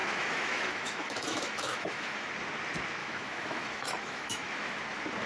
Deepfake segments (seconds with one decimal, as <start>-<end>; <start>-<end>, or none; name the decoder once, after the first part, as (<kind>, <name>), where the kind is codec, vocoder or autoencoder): 0.0-2.3 (autoencoder, DAC-VAE); 3.0-4.8